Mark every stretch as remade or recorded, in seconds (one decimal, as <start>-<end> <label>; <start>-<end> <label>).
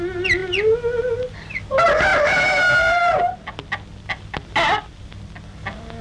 0.0-6.0 recorded